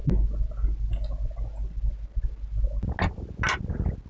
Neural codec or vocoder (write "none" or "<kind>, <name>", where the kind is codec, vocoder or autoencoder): none